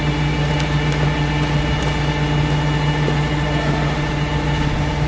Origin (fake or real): real